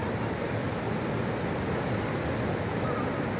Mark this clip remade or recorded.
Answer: recorded